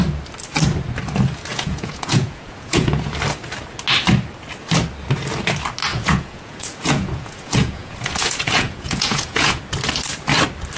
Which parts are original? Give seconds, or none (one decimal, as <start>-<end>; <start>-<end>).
0.0-1.5; 3.1-5.9; 9.6-10.8